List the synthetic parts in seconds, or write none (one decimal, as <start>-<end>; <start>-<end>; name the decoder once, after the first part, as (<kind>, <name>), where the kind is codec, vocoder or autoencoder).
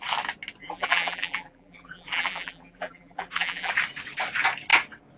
0.6-3.7 (vocoder, BigVGAN v2)